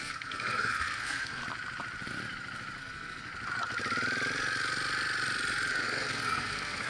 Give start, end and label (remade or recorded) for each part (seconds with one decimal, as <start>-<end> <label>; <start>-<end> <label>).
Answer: 0.0-1.4 remade; 1.4-2.8 recorded; 2.8-3.3 remade; 3.3-5.7 recorded; 5.7-6.9 remade